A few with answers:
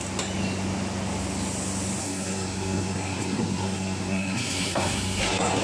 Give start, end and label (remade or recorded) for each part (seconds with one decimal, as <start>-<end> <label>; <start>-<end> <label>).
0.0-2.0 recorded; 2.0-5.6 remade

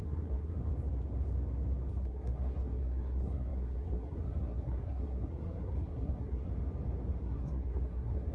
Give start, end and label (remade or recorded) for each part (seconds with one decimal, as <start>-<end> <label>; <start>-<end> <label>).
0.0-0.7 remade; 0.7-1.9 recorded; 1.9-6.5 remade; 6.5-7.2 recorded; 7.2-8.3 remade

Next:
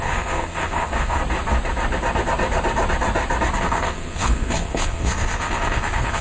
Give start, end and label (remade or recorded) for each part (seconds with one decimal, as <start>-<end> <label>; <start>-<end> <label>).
0.0-1.2 remade; 1.2-3.6 recorded; 3.6-6.2 remade

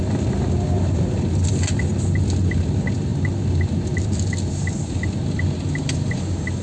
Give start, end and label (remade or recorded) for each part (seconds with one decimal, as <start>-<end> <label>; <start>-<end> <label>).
0.0-6.6 recorded

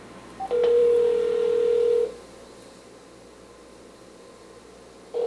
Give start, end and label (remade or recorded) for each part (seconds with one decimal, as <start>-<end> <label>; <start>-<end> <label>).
0.0-5.3 recorded

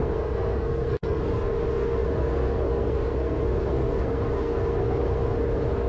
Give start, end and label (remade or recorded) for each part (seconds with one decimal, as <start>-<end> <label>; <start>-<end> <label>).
0.0-5.9 remade

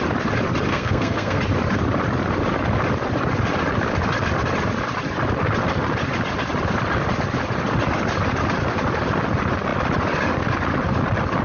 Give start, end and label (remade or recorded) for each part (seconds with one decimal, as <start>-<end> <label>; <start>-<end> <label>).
0.0-0.7 recorded; 0.7-1.4 remade; 1.4-11.4 recorded